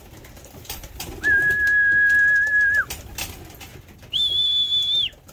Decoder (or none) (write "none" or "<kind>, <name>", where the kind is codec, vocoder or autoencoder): none